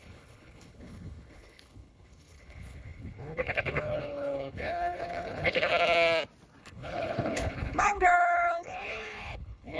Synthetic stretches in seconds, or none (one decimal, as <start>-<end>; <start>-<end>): 0.0-5.7; 6.6-9.8